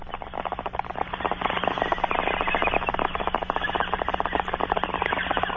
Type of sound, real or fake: real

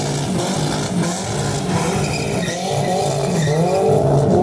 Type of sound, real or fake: real